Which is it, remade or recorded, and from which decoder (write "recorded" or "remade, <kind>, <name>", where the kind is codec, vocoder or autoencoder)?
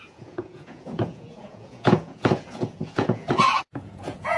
remade, vocoder, Vocos